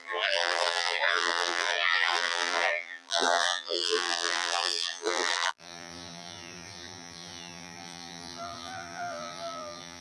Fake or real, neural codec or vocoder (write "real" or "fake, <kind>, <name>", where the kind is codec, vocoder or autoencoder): fake, vocoder, BigVGAN v2